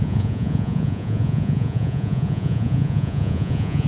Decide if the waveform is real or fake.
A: fake